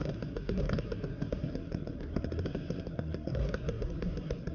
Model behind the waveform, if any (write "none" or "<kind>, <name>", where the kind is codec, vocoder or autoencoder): codec, SNAC